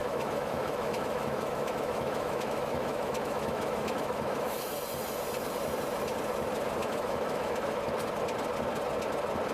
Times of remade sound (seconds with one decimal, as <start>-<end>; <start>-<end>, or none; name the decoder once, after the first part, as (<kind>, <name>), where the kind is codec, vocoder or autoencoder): 0.0-4.7 (autoencoder, DAC-VAE); 6.8-7.8